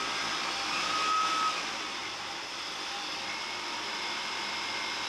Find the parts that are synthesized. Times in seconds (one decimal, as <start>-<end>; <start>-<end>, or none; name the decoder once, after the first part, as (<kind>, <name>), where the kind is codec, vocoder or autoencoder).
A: none